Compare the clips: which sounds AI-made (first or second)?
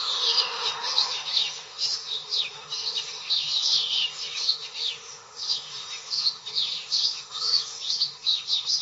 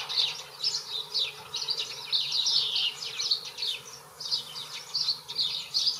first